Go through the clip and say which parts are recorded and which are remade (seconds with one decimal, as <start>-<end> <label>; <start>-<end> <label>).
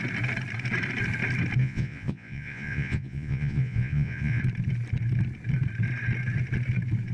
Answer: 0.0-1.6 recorded; 1.6-4.4 remade; 4.4-7.1 recorded